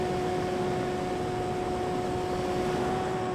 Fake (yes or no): no